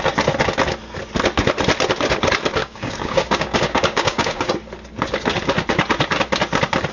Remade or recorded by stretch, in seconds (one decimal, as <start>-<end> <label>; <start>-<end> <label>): 0.0-2.6 recorded; 2.6-4.5 remade; 4.5-6.9 recorded